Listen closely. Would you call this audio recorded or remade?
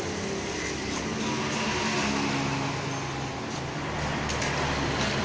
recorded